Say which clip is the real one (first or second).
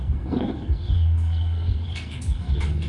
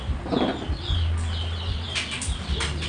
second